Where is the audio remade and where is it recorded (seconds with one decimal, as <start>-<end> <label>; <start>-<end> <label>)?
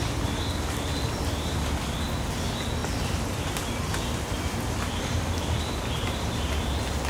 0.0-7.1 recorded